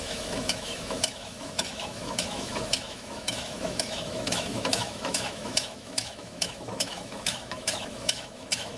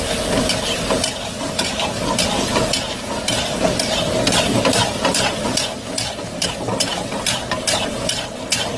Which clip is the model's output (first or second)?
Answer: first